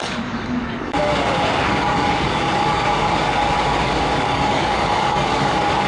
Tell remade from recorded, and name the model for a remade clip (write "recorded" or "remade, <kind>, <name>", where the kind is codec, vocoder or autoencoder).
remade, codec, DAC